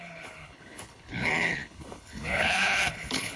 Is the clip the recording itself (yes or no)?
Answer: no